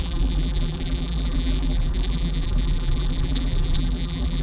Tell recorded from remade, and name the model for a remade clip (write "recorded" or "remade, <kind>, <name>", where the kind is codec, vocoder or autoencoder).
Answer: remade, vocoder, BigVGAN v2